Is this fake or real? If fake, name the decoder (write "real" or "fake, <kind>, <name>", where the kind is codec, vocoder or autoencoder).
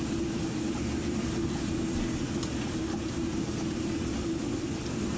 real